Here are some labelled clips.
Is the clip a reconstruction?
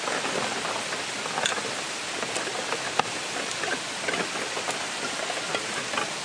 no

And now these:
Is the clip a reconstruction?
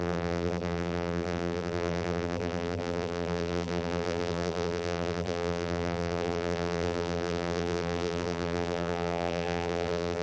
yes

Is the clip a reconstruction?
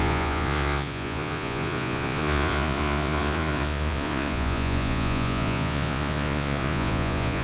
yes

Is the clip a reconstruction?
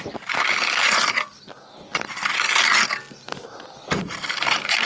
no